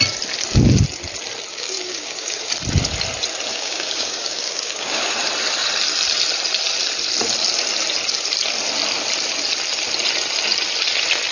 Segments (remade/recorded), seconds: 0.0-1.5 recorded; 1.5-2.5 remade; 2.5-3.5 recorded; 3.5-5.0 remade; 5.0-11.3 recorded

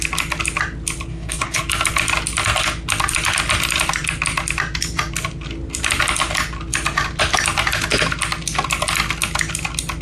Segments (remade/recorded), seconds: 0.0-1.1 recorded; 1.1-1.6 remade; 1.6-10.0 recorded